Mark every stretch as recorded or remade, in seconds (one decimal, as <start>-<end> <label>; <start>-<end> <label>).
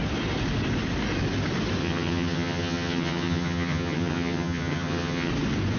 0.0-1.8 recorded; 1.8-5.3 remade; 5.3-5.8 recorded